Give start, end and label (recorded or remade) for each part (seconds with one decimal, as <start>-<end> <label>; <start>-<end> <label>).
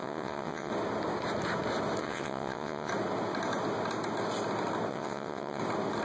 0.0-0.7 remade; 0.7-2.0 recorded; 2.0-2.9 remade; 2.9-4.9 recorded; 4.9-5.6 remade; 5.6-6.0 recorded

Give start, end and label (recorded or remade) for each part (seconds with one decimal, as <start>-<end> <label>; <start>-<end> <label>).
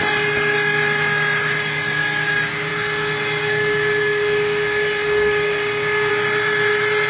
0.0-2.7 recorded; 2.7-6.1 remade; 6.1-7.1 recorded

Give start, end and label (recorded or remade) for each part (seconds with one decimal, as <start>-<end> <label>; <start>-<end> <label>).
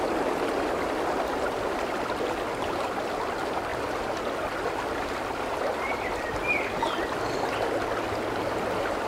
0.0-3.7 recorded; 3.7-6.7 remade; 6.7-9.1 recorded